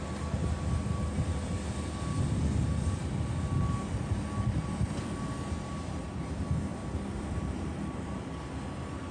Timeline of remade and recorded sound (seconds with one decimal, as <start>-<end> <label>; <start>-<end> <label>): 0.0-6.7 recorded; 6.7-8.2 remade; 8.2-9.1 recorded